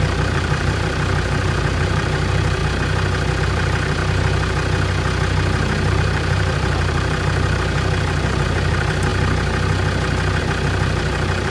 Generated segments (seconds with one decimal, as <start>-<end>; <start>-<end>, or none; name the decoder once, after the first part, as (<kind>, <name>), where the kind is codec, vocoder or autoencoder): 0.0-2.6 (vocoder, BigVGAN v2); 3.4-4.0; 5.9-9.1; 10.4-11.5